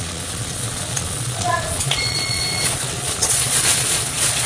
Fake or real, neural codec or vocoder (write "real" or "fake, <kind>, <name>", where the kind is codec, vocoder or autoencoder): fake, vocoder, Vocos